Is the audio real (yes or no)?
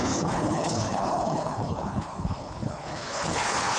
no